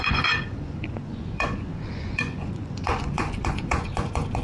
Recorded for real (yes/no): no